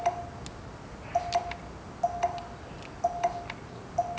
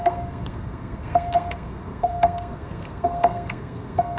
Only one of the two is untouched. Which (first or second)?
first